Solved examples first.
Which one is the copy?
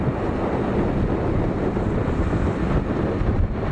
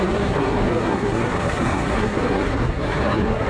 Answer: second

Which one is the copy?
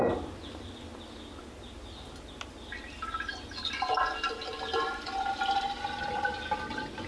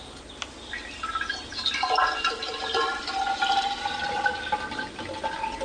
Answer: second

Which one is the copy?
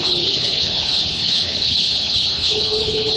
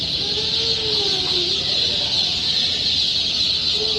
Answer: first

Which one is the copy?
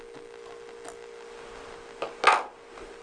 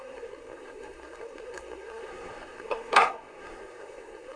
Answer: second